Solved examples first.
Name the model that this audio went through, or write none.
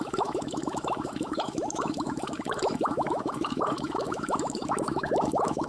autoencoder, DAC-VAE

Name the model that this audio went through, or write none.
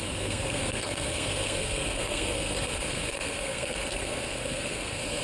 codec, SNAC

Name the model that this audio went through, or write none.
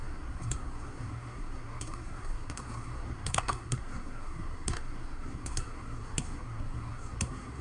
codec, SNAC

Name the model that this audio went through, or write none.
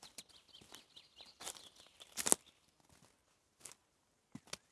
none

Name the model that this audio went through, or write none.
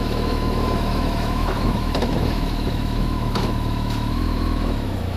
autoencoder, DAC-VAE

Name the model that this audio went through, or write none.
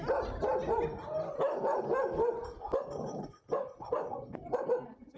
none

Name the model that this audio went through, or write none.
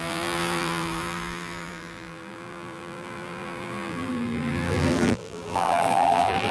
vocoder, BigVGAN v2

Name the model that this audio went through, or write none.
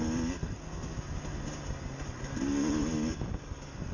none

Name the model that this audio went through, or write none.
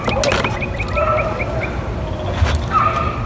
none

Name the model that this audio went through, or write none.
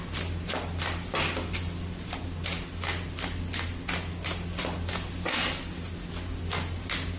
none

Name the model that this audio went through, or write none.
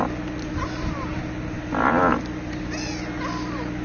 none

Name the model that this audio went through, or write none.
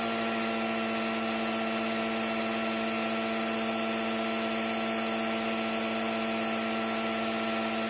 none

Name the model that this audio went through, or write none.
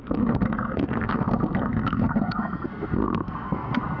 codec, SNAC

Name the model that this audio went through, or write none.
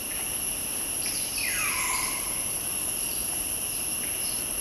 vocoder, BigVGAN v2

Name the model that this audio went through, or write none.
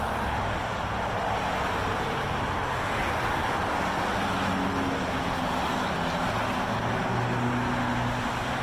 none